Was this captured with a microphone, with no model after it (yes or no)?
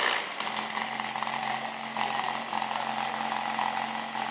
yes